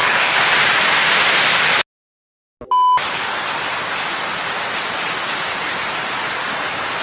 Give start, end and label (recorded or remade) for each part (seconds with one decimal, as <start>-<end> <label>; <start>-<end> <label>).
0.0-0.5 remade; 0.5-7.0 recorded